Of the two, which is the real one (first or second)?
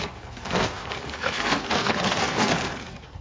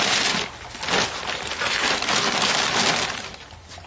second